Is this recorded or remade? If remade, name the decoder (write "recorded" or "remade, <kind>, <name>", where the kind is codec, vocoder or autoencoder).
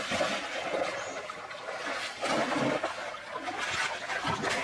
recorded